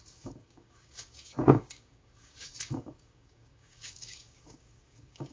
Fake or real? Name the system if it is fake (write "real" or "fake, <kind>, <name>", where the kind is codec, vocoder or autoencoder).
fake, codec, DAC